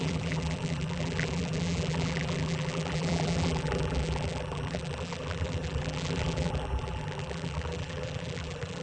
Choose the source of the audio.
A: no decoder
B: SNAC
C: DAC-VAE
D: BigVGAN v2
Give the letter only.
D